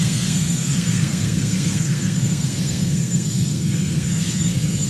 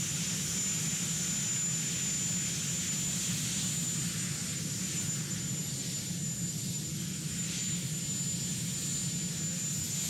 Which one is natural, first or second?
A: second